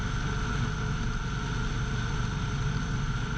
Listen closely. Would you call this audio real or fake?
real